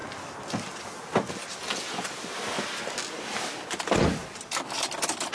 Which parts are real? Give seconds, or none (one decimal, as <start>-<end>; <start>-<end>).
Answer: 0.0-5.3